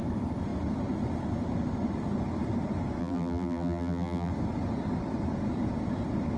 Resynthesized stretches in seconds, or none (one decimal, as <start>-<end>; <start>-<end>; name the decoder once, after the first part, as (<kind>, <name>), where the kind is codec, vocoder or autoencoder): 3.0-4.3 (vocoder, BigVGAN v2)